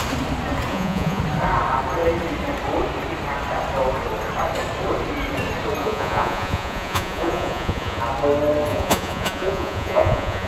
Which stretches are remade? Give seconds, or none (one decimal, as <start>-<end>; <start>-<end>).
0.7-1.2; 5.8-8.0; 8.7-10.5